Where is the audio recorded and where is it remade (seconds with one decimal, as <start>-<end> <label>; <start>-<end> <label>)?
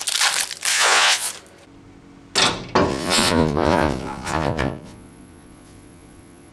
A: 0.0-0.7 recorded; 0.7-1.3 remade; 1.3-2.9 recorded; 2.9-6.5 remade